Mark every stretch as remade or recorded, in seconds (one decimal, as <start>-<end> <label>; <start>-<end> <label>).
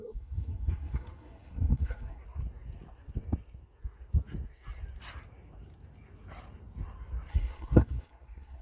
0.0-2.2 remade; 2.2-7.3 recorded; 7.3-8.6 remade